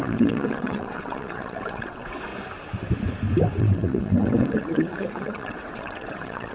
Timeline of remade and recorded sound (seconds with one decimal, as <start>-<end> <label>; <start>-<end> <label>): 0.0-2.3 remade; 2.3-3.6 recorded; 3.6-6.5 remade